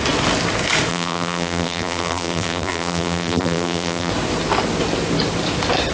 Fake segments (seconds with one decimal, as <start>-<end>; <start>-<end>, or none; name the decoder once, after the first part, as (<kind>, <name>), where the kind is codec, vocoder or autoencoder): 0.9-4.1 (vocoder, BigVGAN v2)